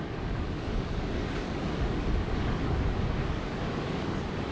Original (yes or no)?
no